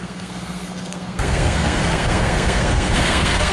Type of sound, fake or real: fake